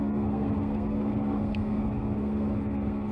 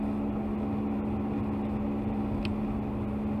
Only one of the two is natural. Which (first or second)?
second